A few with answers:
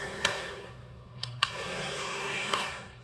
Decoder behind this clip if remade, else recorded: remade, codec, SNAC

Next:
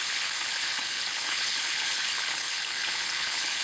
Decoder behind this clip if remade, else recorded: remade, codec, HILCodec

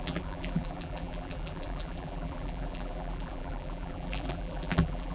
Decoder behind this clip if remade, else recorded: remade, vocoder, BigVGAN v2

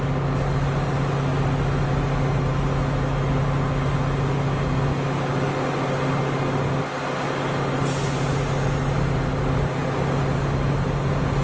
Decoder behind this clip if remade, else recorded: recorded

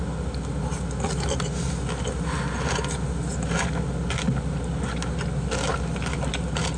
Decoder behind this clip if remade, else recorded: recorded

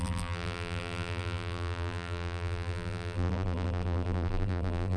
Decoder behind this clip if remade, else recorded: remade, vocoder, BigVGAN v2